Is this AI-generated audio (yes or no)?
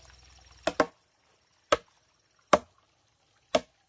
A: no